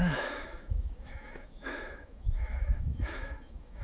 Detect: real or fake fake